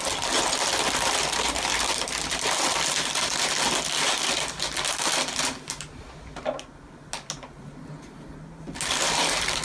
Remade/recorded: recorded